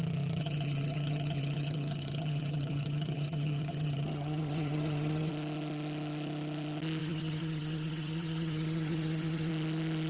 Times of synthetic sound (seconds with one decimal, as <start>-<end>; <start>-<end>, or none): 0.4-5.3; 7.0-9.5